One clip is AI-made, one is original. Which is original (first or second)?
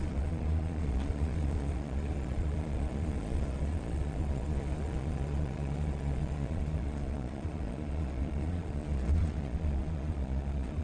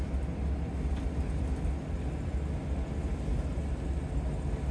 second